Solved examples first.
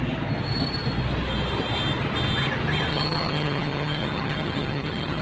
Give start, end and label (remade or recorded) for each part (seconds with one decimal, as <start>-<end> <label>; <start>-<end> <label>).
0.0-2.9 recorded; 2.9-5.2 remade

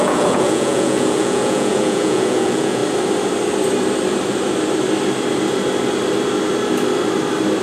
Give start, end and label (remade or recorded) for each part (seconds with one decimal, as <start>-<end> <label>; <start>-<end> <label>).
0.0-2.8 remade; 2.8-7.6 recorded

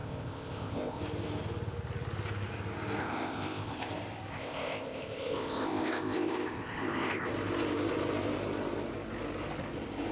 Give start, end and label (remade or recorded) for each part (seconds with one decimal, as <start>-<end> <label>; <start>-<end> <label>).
0.0-1.0 remade; 1.0-3.0 recorded; 3.0-3.9 remade; 3.9-4.3 recorded; 4.3-7.3 remade; 7.3-10.1 recorded

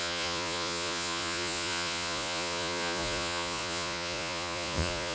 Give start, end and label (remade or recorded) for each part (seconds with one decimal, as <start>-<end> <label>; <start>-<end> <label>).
0.0-5.1 remade